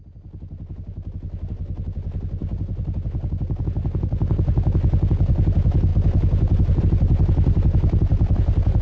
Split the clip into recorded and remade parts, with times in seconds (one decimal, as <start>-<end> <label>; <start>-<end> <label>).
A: 0.0-8.8 recorded

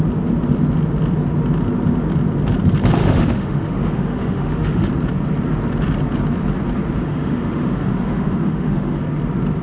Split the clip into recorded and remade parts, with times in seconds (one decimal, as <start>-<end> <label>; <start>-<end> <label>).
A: 0.0-3.0 recorded; 3.0-4.9 remade; 4.9-7.0 recorded; 7.0-9.0 remade; 9.0-9.6 recorded